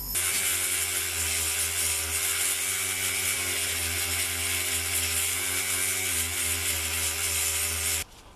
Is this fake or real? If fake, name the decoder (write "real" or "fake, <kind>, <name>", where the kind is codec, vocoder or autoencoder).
real